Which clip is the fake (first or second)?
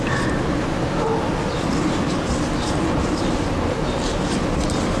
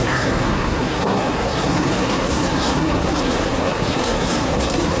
second